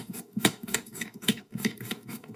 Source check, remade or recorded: remade